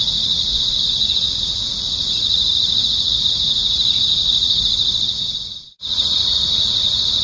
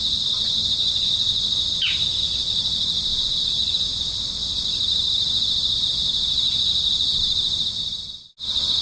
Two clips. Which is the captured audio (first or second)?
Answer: second